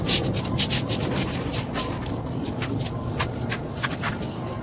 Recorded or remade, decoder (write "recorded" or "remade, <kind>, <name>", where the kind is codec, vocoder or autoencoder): recorded